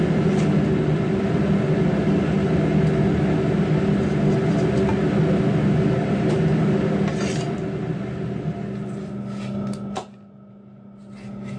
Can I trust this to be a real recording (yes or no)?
yes